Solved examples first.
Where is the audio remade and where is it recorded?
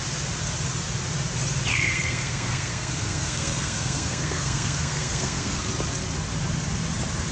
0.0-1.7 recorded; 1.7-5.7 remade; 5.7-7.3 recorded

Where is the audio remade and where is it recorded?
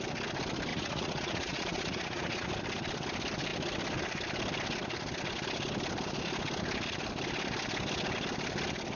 0.0-0.7 recorded; 0.7-2.5 remade; 2.5-9.0 recorded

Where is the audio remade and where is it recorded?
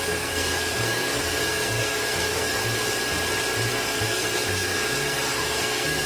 0.0-2.6 remade; 2.6-3.7 recorded; 3.7-6.1 remade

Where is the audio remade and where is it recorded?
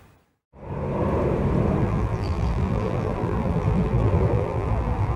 0.0-1.8 recorded; 1.8-5.2 remade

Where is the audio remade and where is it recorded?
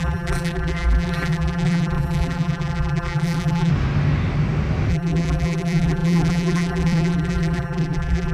0.0-3.7 remade; 3.7-4.9 recorded; 4.9-8.3 remade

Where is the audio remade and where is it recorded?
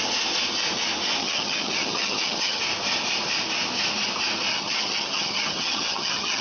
0.0-1.2 recorded; 1.2-2.6 remade; 2.6-4.5 recorded; 4.5-6.4 remade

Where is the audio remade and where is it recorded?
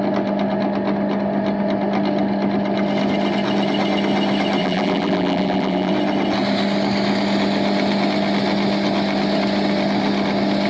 0.0-4.6 recorded; 4.6-5.9 remade; 5.9-10.7 recorded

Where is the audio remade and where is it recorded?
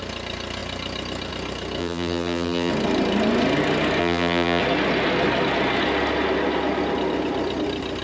0.0-1.8 recorded; 1.8-2.7 remade; 2.7-4.0 recorded; 4.0-4.6 remade; 4.6-8.0 recorded